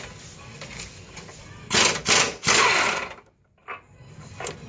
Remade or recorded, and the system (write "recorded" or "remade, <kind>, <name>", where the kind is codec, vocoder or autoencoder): recorded